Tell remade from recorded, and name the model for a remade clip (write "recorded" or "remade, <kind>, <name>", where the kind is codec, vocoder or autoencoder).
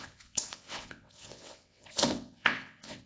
remade, vocoder, WaveNeXt